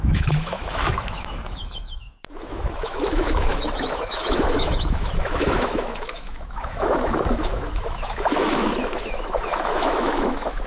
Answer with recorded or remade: remade